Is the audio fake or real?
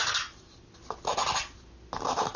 real